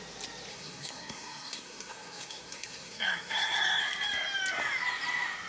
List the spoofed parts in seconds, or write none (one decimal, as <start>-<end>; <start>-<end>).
0.5-3.8